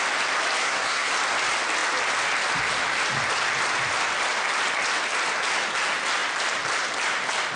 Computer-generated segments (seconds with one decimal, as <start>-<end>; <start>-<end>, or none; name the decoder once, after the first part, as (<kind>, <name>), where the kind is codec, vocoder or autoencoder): 0.6-1.1 (codec, SNAC)